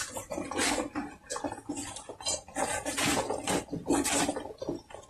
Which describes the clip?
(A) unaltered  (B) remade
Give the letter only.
B